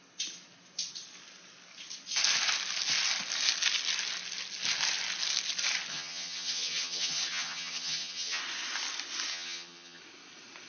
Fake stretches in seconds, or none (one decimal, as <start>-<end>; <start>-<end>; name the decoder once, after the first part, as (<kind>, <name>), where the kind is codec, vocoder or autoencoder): 5.9-8.4 (vocoder, HiFi-GAN); 9.3-10.0